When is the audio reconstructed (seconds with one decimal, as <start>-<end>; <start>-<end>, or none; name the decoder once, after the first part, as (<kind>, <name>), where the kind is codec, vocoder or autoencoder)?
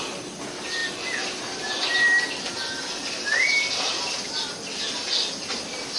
none